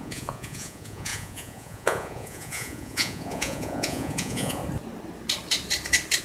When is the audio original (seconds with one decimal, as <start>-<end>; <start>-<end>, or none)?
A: 4.6-6.2